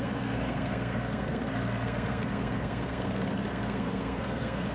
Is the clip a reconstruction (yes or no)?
yes